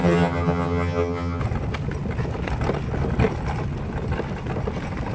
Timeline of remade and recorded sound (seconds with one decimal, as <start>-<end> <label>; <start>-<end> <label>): 0.0-1.4 remade; 1.4-5.1 recorded